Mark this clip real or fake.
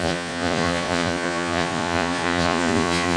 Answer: fake